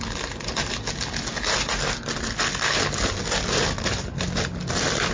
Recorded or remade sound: recorded